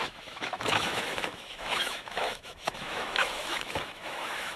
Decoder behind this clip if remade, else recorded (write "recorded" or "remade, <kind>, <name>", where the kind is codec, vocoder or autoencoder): remade, autoencoder, DAC-VAE